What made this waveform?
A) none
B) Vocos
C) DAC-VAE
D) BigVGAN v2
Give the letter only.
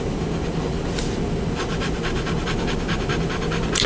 A